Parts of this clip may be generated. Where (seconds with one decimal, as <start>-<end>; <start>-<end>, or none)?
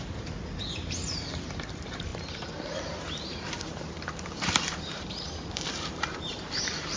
0.0-1.0; 1.7-7.0